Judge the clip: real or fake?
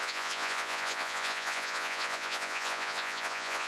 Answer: fake